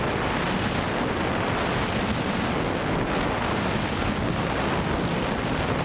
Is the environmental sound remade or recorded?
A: recorded